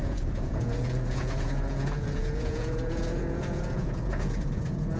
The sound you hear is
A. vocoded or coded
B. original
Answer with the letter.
A